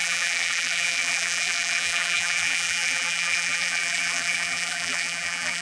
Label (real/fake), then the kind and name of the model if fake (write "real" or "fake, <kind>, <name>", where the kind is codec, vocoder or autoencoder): fake, vocoder, BigVGAN v2